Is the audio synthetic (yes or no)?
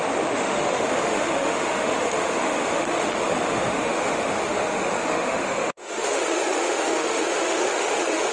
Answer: yes